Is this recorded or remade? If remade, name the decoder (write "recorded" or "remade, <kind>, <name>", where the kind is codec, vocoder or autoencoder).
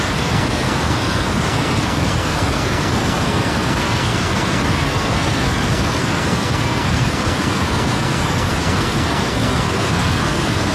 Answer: remade, codec, SNAC